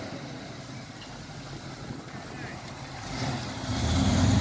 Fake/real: real